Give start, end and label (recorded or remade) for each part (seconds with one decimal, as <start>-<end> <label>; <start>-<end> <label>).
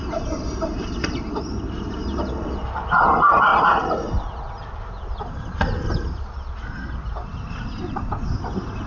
0.0-8.9 recorded